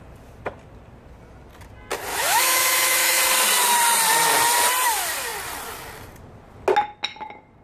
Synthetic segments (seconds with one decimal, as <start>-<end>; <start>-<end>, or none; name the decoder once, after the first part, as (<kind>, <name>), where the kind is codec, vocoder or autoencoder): 2.1-3.2 (autoencoder, DAC-VAE)